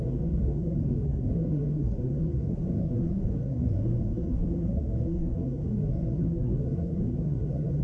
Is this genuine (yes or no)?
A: no